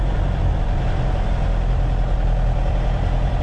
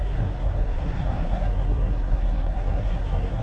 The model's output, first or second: second